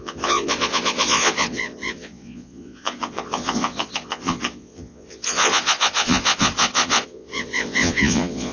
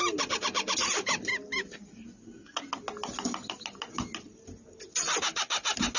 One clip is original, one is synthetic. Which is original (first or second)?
second